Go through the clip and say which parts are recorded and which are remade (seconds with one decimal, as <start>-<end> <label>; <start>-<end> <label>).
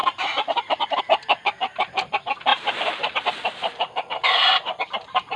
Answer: 0.0-1.0 remade; 1.0-2.5 recorded; 2.5-5.4 remade